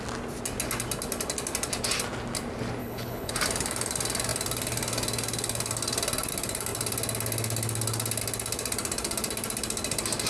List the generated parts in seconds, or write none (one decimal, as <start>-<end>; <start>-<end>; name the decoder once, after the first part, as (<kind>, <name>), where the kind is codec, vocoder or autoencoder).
2.8-3.3 (codec, HILCodec)